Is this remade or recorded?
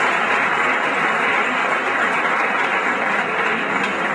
recorded